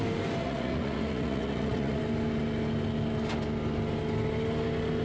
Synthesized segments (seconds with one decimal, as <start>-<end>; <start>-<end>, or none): 0.4-2.0